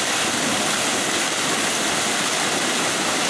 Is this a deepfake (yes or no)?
no